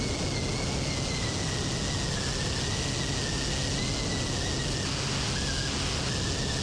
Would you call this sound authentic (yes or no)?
yes